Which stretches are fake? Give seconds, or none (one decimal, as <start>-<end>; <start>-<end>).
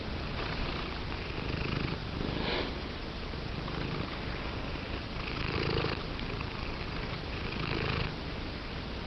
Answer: 0.0-2.0; 5.3-9.1